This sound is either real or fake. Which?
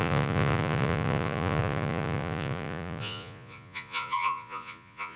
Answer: fake